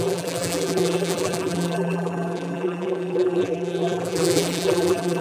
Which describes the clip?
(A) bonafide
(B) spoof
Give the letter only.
B